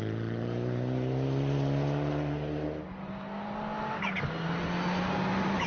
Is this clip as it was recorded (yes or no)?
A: yes